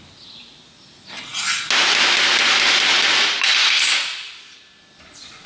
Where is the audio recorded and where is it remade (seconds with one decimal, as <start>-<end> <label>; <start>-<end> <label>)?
0.0-5.5 recorded